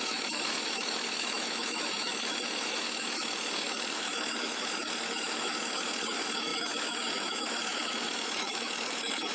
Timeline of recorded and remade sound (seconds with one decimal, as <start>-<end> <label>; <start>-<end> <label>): 0.0-9.3 remade